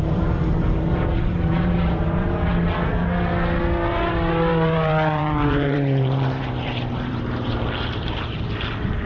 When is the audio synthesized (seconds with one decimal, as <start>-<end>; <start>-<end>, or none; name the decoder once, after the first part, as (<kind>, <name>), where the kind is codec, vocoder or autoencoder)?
0.0-2.5 (vocoder, BigVGAN v2); 3.9-9.1